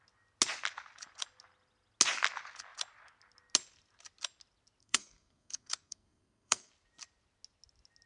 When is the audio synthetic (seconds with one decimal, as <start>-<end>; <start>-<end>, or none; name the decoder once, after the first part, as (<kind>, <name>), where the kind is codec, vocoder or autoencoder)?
4.8-6.7 (codec, SNAC)